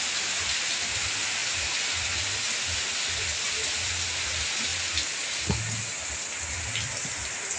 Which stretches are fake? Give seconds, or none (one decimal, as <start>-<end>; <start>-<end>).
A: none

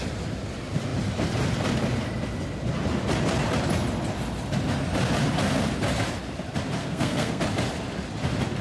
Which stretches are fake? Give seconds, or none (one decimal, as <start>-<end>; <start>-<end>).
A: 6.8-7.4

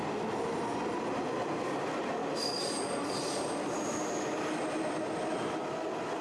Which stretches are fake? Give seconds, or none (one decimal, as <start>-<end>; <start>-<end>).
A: none

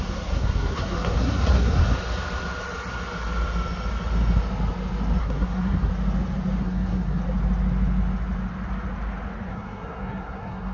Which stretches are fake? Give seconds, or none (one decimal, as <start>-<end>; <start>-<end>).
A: 0.0-1.8; 5.2-5.9; 6.6-7.2; 9.5-10.7

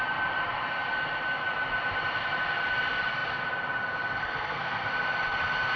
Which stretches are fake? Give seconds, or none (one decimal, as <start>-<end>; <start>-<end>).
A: 4.2-4.9

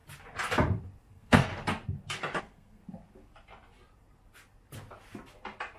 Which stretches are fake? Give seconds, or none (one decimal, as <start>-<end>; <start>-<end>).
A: 1.1-1.5; 2.4-2.8

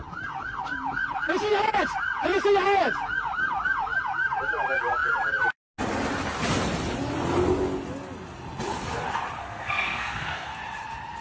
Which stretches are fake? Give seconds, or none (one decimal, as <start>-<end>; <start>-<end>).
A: 9.4-10.6